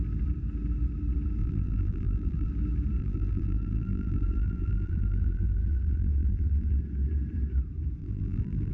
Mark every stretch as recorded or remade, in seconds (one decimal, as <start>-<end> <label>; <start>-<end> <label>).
0.0-1.4 recorded; 1.4-2.5 remade; 2.5-3.0 recorded; 3.0-6.8 remade; 6.8-8.0 recorded; 8.0-8.7 remade